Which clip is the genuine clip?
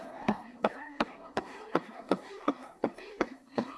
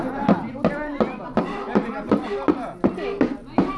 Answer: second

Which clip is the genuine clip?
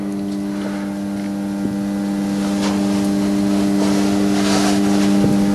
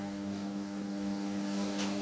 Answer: first